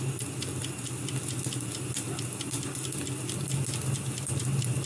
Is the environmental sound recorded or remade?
recorded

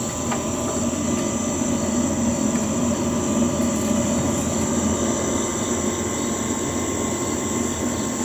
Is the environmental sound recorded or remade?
recorded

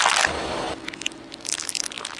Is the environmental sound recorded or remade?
recorded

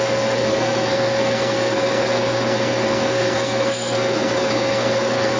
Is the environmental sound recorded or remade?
remade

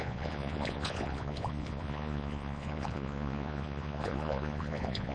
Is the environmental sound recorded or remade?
remade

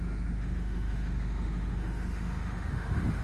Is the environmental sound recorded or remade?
remade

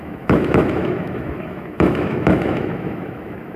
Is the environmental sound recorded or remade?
remade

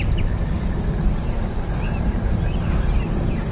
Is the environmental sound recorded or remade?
recorded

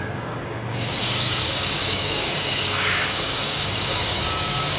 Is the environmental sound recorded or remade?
remade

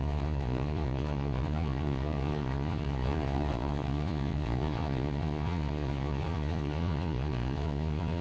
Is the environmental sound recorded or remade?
remade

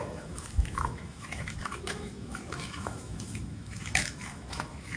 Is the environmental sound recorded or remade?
remade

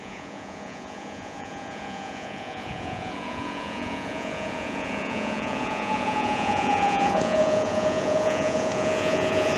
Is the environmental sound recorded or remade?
remade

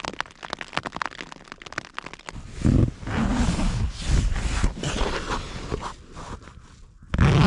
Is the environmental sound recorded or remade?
recorded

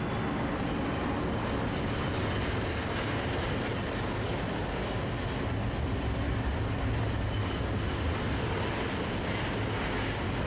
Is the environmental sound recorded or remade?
recorded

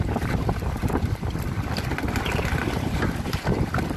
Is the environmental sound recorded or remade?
recorded